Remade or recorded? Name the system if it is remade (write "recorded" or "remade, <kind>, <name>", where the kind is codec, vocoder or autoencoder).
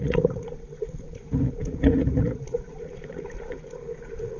remade, vocoder, Vocos